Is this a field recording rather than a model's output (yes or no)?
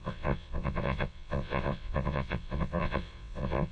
no